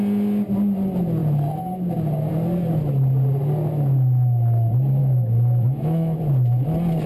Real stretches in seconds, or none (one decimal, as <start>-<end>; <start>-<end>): 0.0-5.0; 6.2-7.1